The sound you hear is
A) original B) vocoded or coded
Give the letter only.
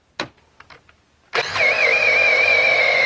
A